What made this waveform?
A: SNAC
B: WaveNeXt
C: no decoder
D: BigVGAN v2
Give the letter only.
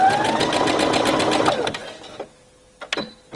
C